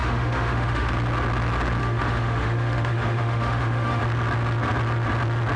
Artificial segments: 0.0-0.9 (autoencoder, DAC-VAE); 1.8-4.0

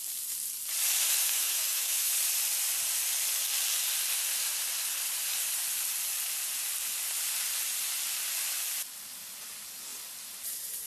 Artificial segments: 1.2-2.1 (autoencoder, DAC-VAE)